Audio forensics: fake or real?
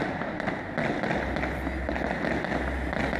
real